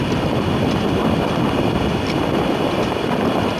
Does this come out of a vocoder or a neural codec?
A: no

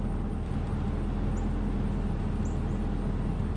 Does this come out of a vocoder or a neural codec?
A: no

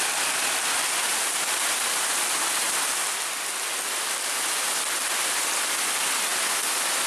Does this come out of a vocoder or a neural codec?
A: no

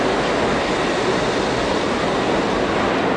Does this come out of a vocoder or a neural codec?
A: no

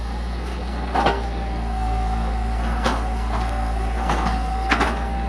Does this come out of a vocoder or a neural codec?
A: yes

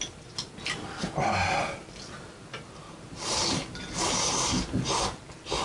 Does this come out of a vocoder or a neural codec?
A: no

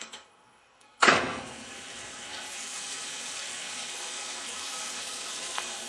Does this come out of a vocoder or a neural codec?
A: yes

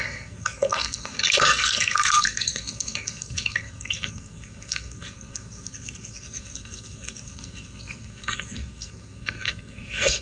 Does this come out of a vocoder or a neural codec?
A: yes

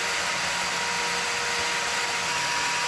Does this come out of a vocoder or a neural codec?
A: no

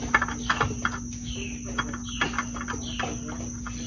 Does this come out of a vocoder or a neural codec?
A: no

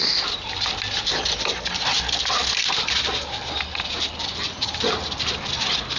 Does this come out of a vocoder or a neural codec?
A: no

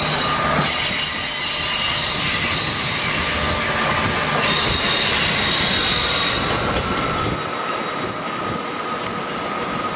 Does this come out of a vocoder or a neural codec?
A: no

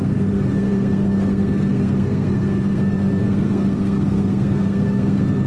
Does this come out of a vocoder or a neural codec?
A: yes